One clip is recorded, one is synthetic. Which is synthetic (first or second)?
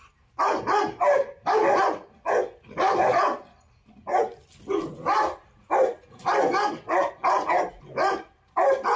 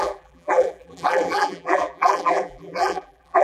second